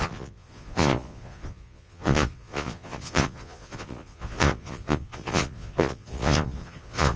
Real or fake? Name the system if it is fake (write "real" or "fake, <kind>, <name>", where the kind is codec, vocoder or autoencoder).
fake, vocoder, Vocos